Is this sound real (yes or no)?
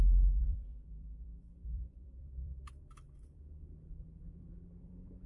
no